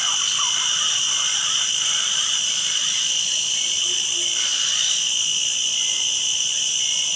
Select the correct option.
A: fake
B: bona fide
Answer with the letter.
B